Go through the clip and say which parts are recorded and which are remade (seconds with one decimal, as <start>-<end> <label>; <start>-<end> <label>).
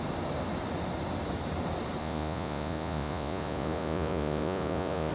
0.0-2.0 recorded; 2.0-5.1 remade